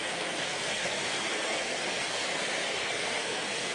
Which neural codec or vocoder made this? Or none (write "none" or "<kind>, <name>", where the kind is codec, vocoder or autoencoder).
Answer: codec, SNAC